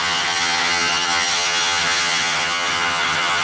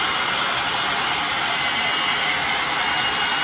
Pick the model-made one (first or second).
first